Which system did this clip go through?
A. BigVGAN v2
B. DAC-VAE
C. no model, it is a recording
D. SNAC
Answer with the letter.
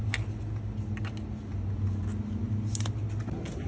C